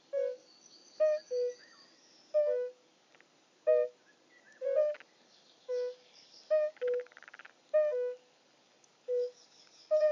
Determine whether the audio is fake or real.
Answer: fake